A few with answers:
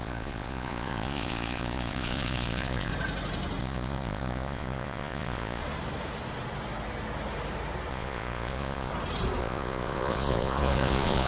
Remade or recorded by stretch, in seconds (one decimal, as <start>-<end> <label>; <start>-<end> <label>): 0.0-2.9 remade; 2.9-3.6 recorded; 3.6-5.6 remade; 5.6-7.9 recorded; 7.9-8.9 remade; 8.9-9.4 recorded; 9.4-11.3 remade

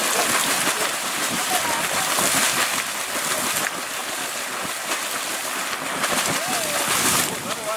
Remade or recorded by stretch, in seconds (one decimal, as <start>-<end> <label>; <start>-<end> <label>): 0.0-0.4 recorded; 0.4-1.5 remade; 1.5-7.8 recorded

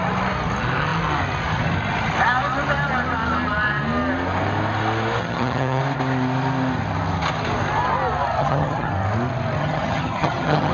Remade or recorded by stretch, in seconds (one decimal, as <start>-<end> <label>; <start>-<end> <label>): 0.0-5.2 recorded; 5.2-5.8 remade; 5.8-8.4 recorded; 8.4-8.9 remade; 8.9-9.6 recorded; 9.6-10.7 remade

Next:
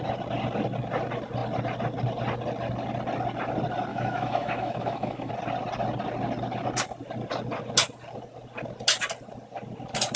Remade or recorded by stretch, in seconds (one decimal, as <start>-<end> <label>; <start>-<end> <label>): 0.0-3.9 recorded; 3.9-5.3 remade; 5.3-10.2 recorded